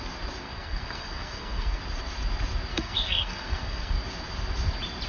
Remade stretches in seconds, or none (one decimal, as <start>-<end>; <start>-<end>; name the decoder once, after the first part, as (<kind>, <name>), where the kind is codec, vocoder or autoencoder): 0.4-1.8 (codec, SNAC); 2.7-3.9